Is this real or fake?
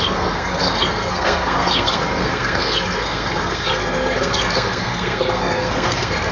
fake